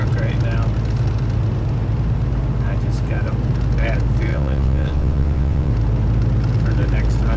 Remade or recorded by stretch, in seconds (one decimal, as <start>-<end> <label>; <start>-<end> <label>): 0.0-4.3 recorded; 4.3-5.7 remade; 5.7-7.4 recorded

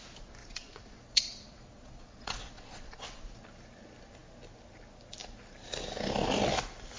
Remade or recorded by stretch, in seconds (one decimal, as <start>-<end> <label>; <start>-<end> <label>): 0.0-0.4 recorded; 0.4-3.4 remade; 3.4-7.0 recorded

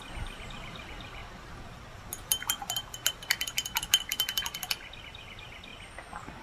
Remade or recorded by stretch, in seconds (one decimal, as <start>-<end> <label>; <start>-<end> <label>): 0.0-1.2 remade; 1.2-5.0 recorded; 5.0-5.7 remade; 5.7-6.4 recorded

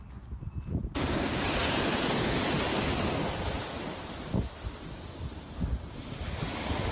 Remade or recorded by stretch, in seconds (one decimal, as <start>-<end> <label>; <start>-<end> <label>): 0.0-1.6 recorded; 1.6-4.7 remade; 4.7-6.9 recorded

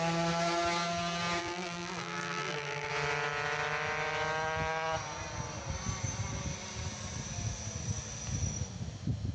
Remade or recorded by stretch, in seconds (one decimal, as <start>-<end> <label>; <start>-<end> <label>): 0.0-1.4 recorded; 1.4-2.9 remade; 2.9-9.3 recorded

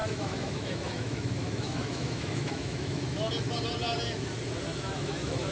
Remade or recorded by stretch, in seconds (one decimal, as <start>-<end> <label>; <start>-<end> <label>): 0.0-3.3 remade; 3.3-4.7 recorded; 4.7-5.5 remade